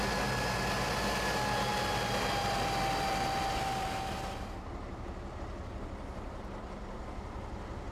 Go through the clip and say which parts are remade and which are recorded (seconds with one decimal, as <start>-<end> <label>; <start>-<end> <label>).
0.0-7.9 recorded